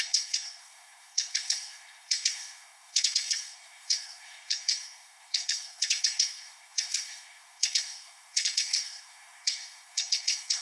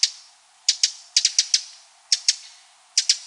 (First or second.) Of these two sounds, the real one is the second